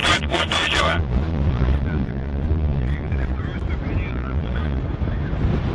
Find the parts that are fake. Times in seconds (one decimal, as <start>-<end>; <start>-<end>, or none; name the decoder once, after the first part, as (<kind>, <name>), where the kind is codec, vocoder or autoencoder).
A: 0.0-3.4 (vocoder, Vocos); 4.1-4.8